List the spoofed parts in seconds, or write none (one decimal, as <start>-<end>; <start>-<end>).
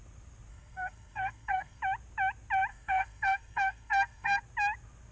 0.5-1.8; 2.7-4.4